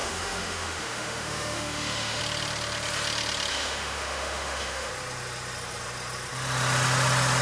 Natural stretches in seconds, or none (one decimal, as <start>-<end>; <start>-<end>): 2.2-3.5; 4.9-7.4